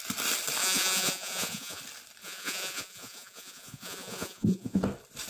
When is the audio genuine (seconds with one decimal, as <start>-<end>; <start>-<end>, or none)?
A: 0.0-0.6; 1.8-2.2; 4.8-5.3